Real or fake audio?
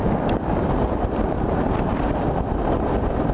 fake